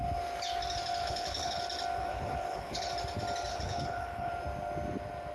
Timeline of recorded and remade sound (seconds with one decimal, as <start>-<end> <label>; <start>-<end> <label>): 0.0-1.0 recorded; 1.0-1.6 remade; 1.6-2.0 recorded; 2.0-2.9 remade; 2.9-3.5 recorded; 3.5-4.3 remade; 4.3-5.3 recorded